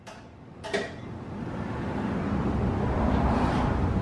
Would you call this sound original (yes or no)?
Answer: yes